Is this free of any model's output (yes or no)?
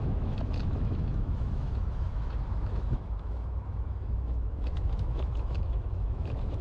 no